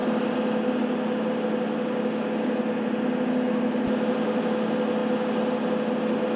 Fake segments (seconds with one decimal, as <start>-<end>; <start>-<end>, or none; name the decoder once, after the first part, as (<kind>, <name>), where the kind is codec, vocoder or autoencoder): none